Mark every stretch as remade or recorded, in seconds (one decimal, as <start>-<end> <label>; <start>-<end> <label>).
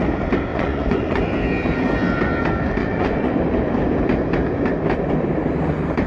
0.0-0.5 recorded; 0.5-1.2 remade; 1.2-2.8 recorded; 2.8-3.3 remade; 3.3-6.1 recorded